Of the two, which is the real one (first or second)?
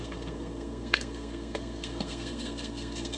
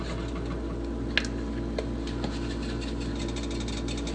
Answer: second